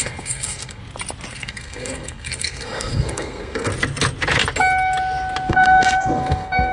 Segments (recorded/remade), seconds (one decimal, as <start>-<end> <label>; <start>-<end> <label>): 0.0-0.8 remade; 0.8-1.3 recorded; 1.3-3.7 remade; 3.7-5.5 recorded; 5.5-6.7 remade